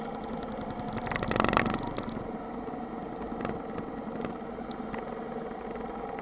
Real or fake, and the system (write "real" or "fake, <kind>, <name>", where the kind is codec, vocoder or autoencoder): real